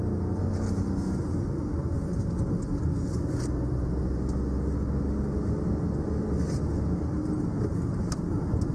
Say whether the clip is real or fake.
real